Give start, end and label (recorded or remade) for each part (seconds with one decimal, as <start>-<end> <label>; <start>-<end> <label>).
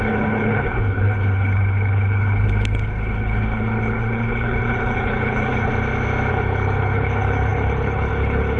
0.0-5.7 remade; 5.7-6.3 recorded; 6.3-8.6 remade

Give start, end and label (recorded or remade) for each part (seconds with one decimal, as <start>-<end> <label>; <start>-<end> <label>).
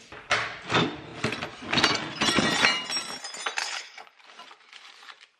0.0-3.6 recorded; 3.6-4.1 remade; 4.1-5.4 recorded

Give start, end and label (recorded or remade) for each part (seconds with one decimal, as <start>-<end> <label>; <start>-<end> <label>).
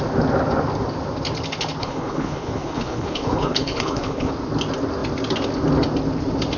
0.0-1.8 recorded; 1.8-4.3 remade; 4.3-6.6 recorded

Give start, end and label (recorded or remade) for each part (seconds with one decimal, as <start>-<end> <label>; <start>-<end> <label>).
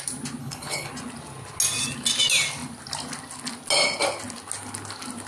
0.0-0.4 recorded; 0.4-0.9 remade; 0.9-5.3 recorded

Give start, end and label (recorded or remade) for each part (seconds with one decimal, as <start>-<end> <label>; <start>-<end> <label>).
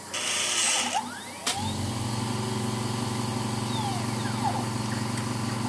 0.0-5.7 recorded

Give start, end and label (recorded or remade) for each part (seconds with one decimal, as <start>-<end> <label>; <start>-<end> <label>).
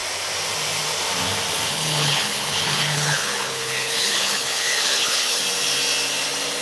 0.0-1.7 recorded; 1.7-5.4 remade; 5.4-6.6 recorded